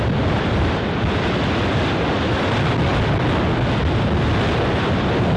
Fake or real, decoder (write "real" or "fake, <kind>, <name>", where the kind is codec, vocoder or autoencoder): real